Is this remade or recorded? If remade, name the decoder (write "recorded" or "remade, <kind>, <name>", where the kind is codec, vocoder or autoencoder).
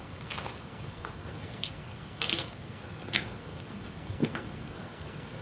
remade, codec, SNAC